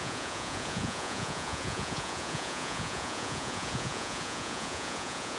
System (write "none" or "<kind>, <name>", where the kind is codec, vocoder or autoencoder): vocoder, Vocos